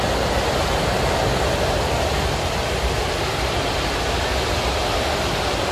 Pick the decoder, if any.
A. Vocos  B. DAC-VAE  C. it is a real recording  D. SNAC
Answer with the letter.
C